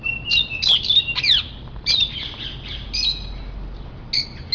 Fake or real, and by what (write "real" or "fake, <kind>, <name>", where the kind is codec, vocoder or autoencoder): real